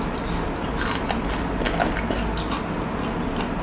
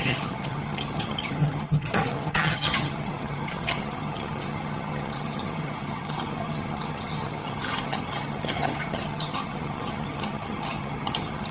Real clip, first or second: first